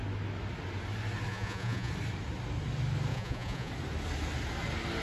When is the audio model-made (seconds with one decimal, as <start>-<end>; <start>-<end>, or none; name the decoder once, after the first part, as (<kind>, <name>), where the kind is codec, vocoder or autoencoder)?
1.3-1.9 (vocoder, Vocos); 3.1-3.7